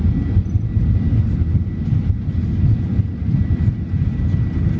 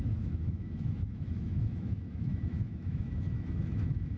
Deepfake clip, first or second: second